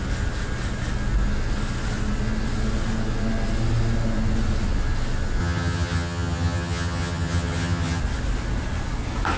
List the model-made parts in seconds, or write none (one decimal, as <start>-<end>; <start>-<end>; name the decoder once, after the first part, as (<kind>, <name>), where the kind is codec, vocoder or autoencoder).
5.4-8.0 (vocoder, HiFi-GAN)